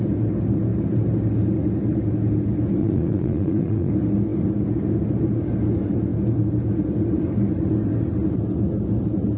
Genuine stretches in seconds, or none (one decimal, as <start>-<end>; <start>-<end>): 0.0-2.8; 3.9-9.4